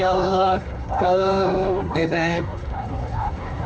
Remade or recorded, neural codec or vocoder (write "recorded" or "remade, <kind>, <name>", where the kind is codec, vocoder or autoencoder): remade, codec, SNAC